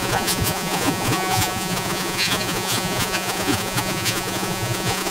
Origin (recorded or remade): remade